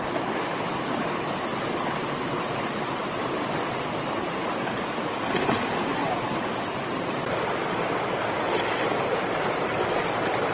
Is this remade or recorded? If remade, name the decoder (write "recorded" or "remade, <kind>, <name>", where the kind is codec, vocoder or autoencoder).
recorded